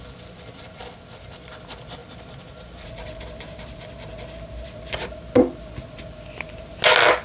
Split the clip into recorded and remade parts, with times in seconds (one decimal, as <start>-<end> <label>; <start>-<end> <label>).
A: 0.0-7.2 recorded